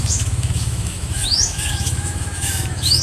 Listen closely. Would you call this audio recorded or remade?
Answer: remade